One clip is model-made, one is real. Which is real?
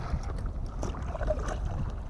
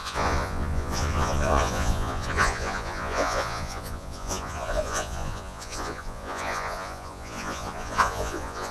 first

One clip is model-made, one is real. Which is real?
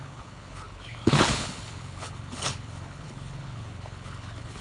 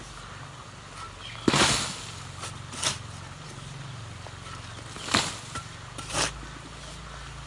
second